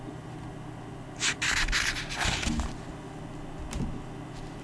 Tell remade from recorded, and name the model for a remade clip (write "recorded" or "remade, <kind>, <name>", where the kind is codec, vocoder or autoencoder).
recorded